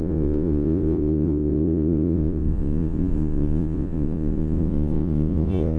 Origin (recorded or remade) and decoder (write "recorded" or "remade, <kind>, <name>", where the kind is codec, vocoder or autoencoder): remade, vocoder, Vocos